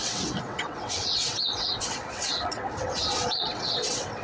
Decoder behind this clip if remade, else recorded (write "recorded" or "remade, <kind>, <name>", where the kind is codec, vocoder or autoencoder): remade, vocoder, WaveNeXt